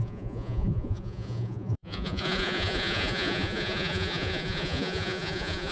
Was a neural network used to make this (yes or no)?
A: yes